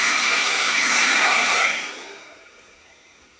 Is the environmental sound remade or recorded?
remade